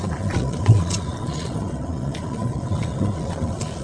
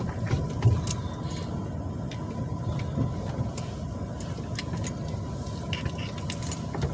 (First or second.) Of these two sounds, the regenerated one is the first